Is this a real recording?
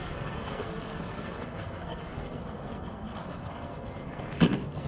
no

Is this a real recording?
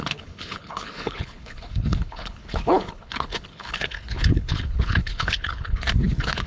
no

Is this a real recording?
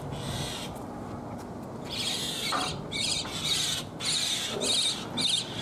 yes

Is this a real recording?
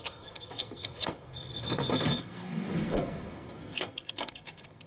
no